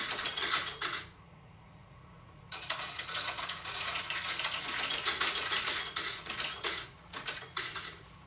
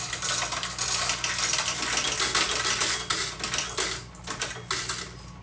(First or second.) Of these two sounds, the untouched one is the second